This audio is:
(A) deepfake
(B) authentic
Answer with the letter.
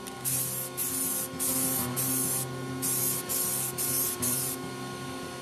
B